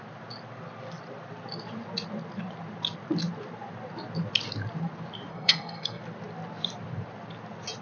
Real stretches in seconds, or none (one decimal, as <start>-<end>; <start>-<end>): 0.0-5.3; 6.0-7.8